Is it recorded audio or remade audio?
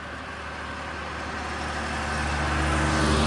recorded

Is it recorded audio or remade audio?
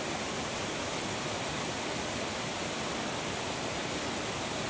recorded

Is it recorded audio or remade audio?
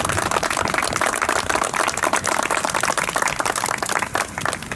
recorded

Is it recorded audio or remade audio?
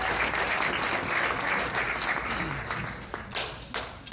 recorded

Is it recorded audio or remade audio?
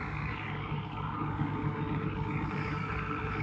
remade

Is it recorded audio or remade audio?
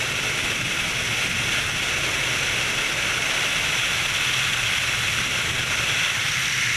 recorded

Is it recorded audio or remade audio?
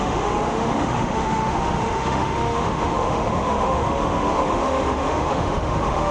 remade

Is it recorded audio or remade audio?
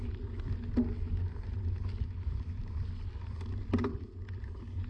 recorded